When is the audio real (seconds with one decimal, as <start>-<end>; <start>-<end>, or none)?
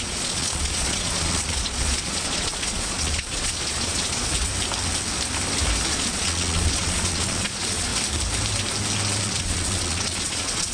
4.5-5.9; 7.9-9.2